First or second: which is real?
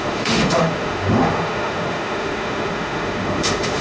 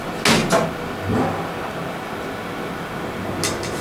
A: second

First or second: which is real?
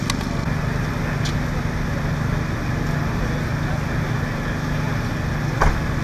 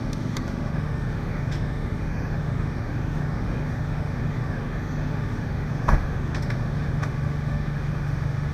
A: first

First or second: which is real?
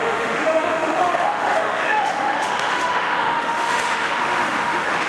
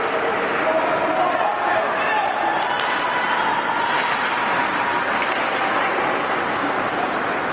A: second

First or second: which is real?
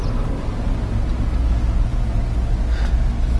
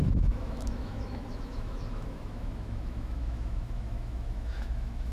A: first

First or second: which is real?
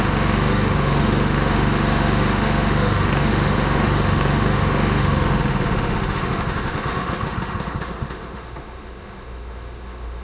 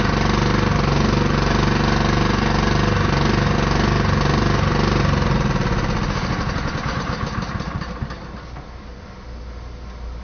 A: second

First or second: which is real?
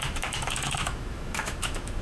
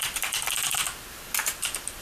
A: second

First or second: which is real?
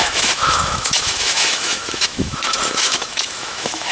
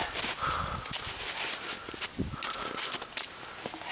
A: second